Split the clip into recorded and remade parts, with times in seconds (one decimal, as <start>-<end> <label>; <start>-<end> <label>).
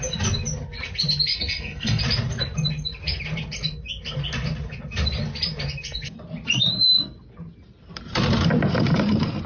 0.0-1.3 recorded; 1.3-2.0 remade; 2.0-9.5 recorded